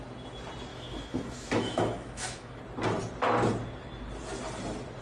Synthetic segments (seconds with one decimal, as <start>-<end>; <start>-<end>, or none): 0.7-2.6